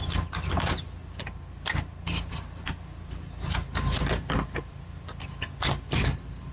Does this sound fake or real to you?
real